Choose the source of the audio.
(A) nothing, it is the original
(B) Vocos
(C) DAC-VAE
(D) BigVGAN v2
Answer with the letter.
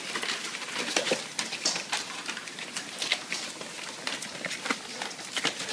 A